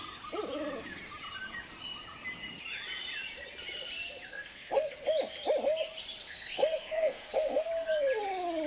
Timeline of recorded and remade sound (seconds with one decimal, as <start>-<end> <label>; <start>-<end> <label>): 0.0-4.3 recorded; 4.3-4.9 remade; 4.9-6.2 recorded; 6.2-7.7 remade; 7.7-8.7 recorded